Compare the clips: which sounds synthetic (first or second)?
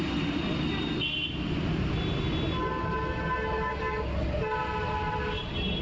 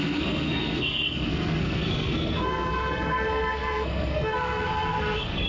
second